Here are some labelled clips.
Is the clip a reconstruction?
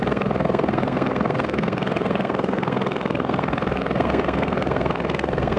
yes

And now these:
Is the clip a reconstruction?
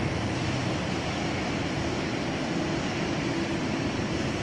no